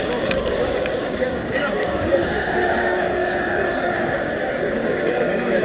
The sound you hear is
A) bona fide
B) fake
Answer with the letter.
B